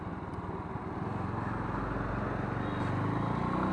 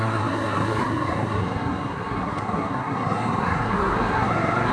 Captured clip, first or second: first